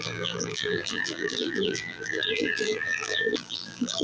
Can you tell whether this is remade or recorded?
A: remade